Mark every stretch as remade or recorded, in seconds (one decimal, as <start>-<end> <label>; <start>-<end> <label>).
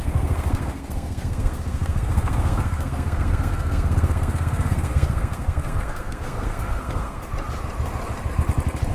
0.0-7.2 remade; 7.2-8.9 recorded